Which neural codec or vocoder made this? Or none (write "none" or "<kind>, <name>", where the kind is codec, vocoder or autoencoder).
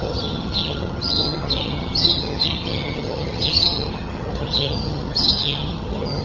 vocoder, HiFi-GAN